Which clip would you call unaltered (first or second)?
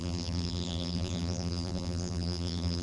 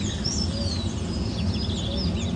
second